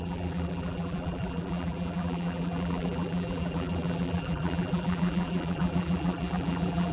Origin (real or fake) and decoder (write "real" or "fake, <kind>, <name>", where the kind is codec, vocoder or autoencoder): fake, vocoder, BigVGAN v2